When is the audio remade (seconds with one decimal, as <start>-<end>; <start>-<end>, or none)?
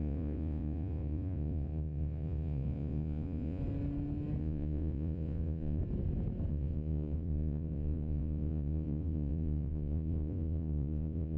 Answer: 0.0-3.6; 4.4-5.8; 6.5-11.4